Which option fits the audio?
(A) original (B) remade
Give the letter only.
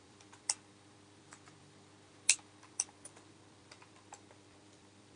B